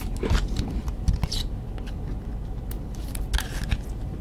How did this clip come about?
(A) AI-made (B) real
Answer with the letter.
B